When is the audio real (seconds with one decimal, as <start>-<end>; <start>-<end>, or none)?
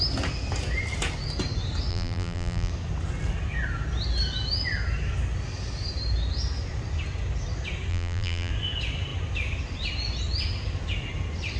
0.0-1.9; 2.7-7.9; 8.5-11.6